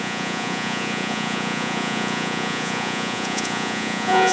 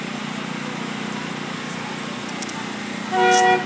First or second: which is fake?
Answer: first